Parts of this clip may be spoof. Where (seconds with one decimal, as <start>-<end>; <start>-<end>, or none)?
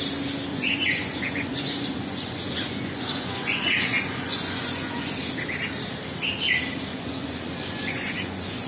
0.5-5.1; 6.9-8.7